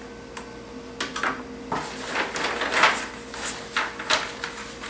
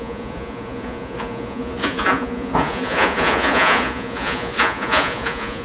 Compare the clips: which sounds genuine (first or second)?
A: first